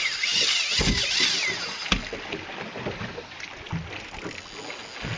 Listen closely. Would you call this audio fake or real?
real